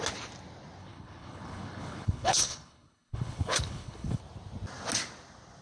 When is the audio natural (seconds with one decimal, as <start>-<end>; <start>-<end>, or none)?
0.0-0.8; 4.2-5.6